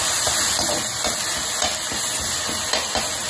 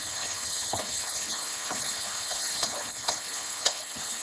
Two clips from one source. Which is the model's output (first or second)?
second